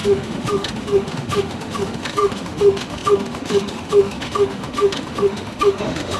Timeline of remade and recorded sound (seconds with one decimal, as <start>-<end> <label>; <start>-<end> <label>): 0.0-6.2 remade